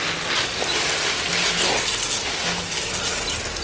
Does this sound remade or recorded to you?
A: recorded